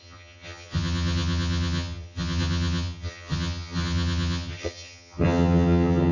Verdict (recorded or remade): remade